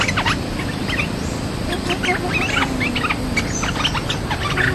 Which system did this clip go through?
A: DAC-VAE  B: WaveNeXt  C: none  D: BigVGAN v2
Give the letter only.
C